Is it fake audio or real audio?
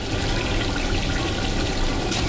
real